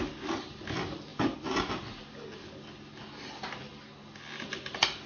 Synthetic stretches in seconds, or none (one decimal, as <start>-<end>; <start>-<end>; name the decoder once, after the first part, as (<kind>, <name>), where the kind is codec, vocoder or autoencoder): none